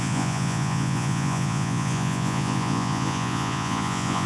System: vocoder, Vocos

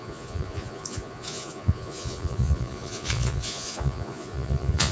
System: vocoder, Vocos